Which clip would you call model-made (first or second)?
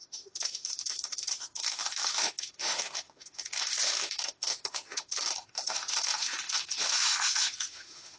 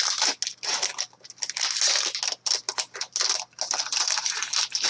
first